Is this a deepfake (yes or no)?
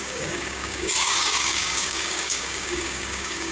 yes